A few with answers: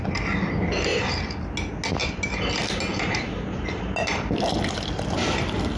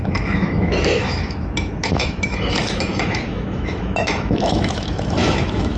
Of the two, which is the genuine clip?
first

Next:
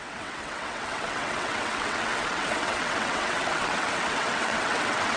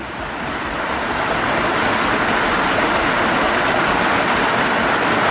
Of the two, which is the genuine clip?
second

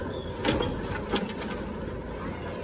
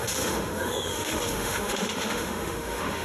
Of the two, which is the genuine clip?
first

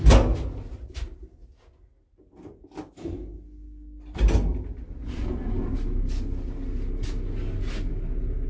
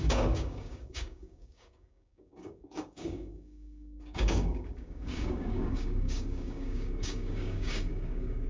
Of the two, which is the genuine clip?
first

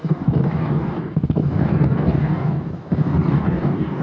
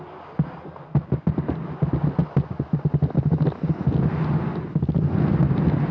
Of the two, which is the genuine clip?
second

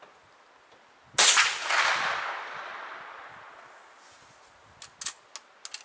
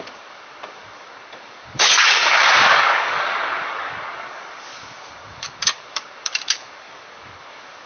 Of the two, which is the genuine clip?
first